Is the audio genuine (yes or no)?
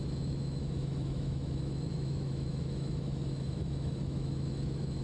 no